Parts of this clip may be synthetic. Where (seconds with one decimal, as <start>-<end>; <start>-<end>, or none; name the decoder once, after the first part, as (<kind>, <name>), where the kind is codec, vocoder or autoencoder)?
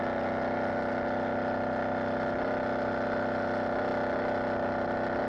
none